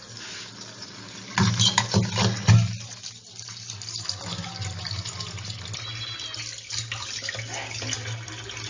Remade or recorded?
recorded